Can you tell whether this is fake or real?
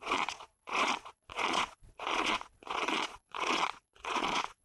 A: fake